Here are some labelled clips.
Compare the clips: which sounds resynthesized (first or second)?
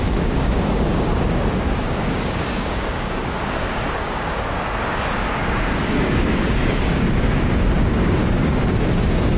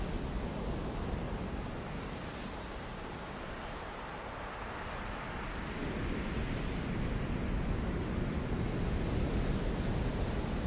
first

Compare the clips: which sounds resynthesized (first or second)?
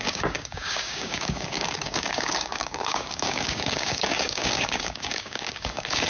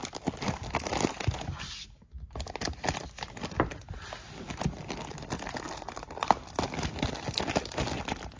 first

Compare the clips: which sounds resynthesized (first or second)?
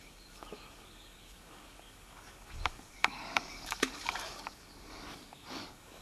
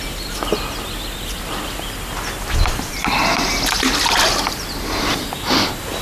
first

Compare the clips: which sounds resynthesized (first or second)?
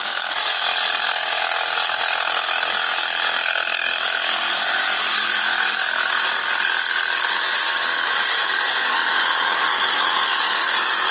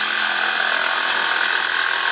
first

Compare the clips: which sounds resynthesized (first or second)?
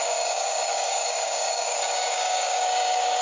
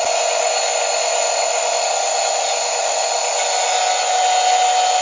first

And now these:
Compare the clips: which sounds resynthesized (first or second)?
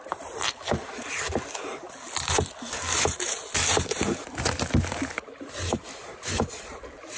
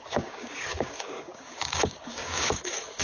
second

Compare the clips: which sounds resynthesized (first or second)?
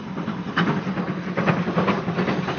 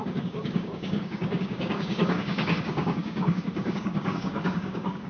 second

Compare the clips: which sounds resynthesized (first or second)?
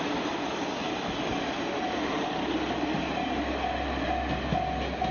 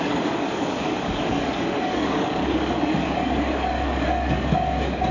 second